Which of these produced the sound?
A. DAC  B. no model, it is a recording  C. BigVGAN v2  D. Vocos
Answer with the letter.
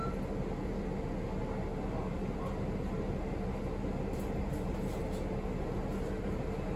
B